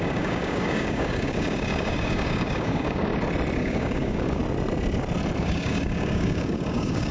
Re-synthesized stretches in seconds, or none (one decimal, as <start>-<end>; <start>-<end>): 0.0-3.1; 3.6-4.4; 5.4-7.1